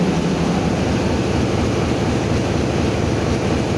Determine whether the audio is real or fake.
real